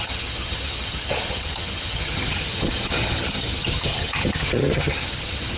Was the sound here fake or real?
fake